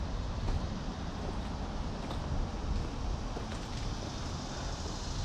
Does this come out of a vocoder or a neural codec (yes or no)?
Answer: no